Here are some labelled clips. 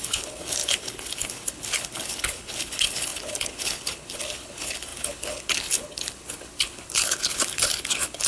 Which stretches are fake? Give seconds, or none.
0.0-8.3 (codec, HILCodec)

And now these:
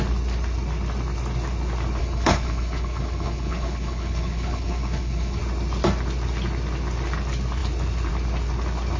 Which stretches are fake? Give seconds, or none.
2.0-5.4 (codec, HILCodec)

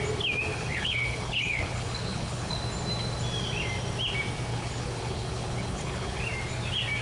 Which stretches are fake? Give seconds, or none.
0.5-2.6 (codec, HILCodec); 4.5-6.2